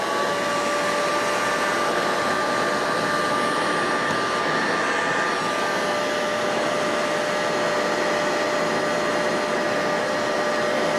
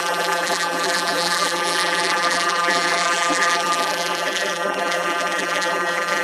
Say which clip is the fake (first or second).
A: second